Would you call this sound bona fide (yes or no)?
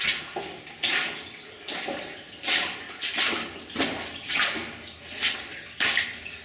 yes